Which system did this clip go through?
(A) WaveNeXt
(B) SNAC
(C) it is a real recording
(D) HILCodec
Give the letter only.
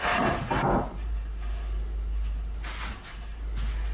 C